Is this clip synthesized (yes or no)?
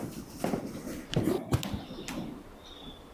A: no